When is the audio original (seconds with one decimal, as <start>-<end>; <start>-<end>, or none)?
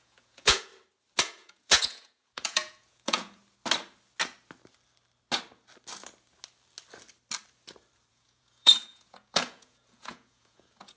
0.7-1.2; 3.4-8.1